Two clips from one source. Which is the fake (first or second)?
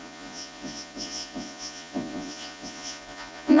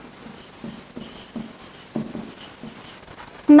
first